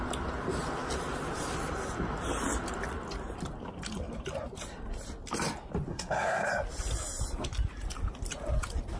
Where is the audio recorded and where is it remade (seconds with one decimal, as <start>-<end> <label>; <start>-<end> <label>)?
0.0-5.9 recorded; 5.9-6.5 remade; 6.5-9.0 recorded